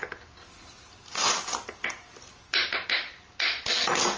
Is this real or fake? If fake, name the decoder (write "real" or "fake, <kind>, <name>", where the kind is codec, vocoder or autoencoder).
real